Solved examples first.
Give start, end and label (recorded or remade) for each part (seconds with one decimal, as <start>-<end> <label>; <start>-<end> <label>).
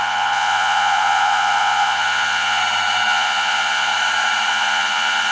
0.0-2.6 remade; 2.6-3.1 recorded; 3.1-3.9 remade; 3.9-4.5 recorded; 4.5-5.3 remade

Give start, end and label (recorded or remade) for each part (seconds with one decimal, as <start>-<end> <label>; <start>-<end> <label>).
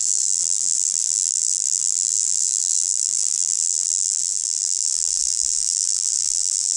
0.0-6.8 remade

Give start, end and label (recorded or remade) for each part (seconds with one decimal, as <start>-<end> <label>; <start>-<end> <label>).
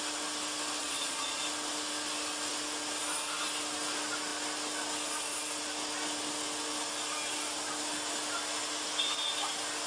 0.0-0.8 recorded; 0.8-1.4 remade; 1.4-9.9 recorded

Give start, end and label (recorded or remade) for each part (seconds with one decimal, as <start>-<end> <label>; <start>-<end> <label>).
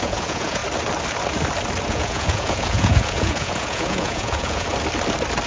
0.0-0.6 remade; 0.6-1.9 recorded; 1.9-4.7 remade; 4.7-5.5 recorded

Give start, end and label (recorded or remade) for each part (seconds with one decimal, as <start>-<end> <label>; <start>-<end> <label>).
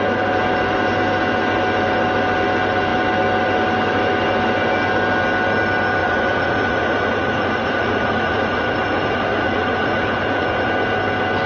0.0-6.0 recorded; 6.0-10.7 remade; 10.7-11.5 recorded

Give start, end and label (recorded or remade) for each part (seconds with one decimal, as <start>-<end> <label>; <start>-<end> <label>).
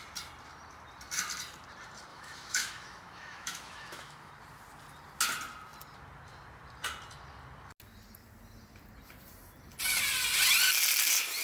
0.0-2.1 recorded; 2.1-4.3 remade; 4.3-11.4 recorded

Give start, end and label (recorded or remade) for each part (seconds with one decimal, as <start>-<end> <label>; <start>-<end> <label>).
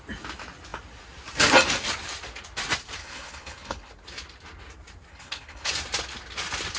0.0-3.0 recorded; 3.0-3.9 remade; 3.9-5.1 recorded; 5.1-5.7 remade; 5.7-6.8 recorded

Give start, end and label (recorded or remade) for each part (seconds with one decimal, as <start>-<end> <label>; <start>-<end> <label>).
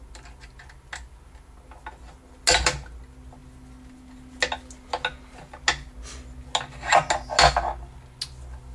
0.0-8.7 recorded